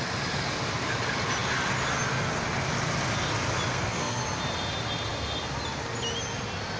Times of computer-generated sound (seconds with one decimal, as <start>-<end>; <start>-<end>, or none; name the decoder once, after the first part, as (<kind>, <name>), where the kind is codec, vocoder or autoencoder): 3.7-4.2 (codec, SNAC)